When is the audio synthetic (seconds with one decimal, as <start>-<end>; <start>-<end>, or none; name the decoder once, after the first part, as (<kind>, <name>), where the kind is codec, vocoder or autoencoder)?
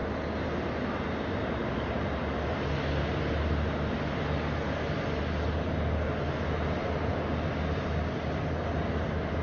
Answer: none